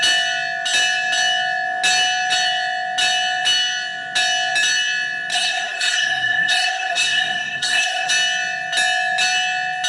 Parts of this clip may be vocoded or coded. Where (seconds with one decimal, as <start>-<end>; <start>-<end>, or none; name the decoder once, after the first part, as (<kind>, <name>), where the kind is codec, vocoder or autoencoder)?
5.3-8.1 (codec, SNAC)